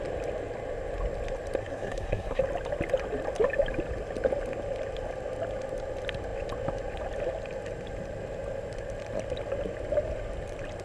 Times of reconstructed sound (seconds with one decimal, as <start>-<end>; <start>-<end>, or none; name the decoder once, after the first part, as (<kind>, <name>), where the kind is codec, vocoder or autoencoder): 1.6-2.4 (codec, SNAC)

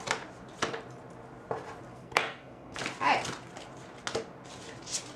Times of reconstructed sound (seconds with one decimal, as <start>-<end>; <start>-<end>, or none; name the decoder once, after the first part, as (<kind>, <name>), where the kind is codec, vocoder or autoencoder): 1.9-2.8 (codec, SNAC)

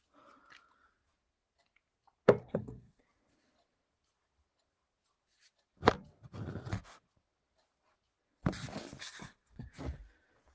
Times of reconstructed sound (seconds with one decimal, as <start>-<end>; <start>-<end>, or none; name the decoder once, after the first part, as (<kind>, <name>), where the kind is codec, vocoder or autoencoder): 2.4-3.0 (codec, SNAC); 9.0-9.7

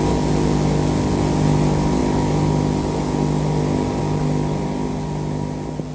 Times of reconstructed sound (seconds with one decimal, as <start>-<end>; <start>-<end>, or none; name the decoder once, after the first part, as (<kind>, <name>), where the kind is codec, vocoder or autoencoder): none

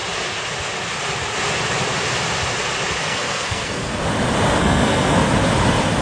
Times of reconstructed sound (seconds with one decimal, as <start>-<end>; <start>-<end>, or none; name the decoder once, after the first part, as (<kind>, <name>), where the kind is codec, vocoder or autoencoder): 3.0-4.0 (codec, SNAC); 4.6-5.3

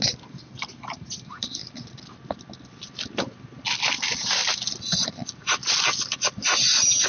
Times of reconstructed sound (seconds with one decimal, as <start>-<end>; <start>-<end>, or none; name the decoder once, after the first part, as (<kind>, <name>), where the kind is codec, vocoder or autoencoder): none

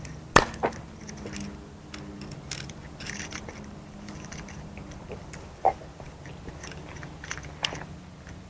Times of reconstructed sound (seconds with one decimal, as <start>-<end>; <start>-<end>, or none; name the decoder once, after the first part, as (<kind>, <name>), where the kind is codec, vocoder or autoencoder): none

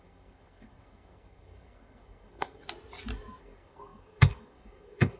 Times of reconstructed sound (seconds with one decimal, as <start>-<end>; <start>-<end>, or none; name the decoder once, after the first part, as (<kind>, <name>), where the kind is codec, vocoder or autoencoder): 0.0-2.6 (codec, SNAC); 3.4-5.2